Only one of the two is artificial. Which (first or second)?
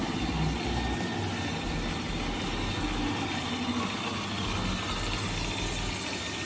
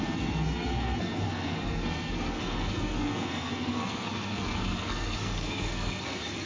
second